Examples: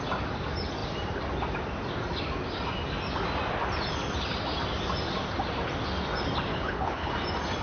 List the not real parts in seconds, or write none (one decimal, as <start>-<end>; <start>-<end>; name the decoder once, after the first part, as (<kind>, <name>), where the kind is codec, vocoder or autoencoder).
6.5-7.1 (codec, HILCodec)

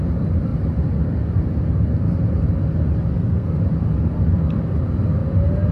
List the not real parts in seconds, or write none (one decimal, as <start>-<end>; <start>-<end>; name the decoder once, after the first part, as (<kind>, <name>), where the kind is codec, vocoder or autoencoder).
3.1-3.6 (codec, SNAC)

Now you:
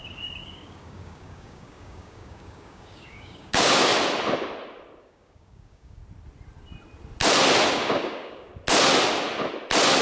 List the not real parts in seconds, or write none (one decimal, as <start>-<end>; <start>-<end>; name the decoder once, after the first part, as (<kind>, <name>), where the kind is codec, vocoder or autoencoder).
0.0-3.9 (codec, DAC); 5.0-6.0; 7.7-8.5

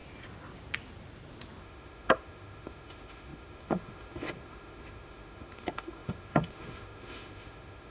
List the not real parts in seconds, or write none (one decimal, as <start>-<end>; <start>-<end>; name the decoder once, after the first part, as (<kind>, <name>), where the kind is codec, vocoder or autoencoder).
1.6-7.9 (autoencoder, DAC-VAE)

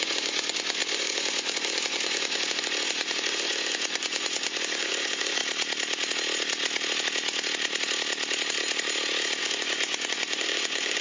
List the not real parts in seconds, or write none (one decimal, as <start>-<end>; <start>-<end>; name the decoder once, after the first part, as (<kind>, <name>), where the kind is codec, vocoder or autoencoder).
0.0-5.4 (vocoder, Vocos); 9.4-11.0